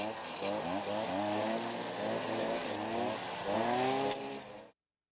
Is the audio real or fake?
real